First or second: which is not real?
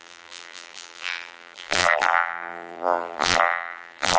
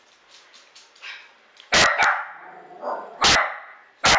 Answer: first